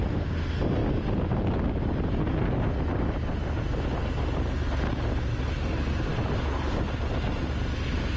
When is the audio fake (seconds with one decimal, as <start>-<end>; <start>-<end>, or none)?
none